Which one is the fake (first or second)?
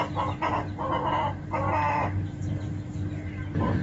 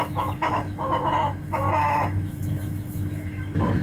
second